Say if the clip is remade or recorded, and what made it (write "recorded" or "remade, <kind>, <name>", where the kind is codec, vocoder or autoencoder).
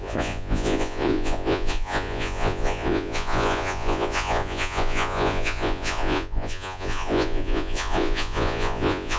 remade, vocoder, Vocos